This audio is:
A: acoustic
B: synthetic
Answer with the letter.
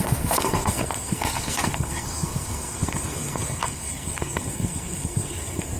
B